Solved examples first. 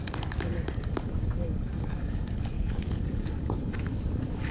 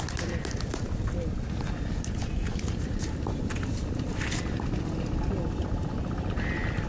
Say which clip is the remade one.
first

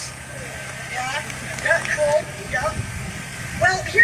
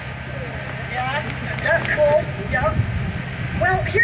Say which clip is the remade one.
first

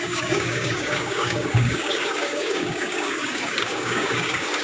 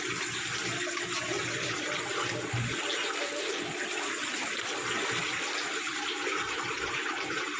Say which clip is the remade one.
first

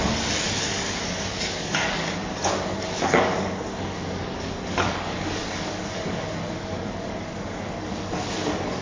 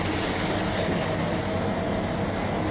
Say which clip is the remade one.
first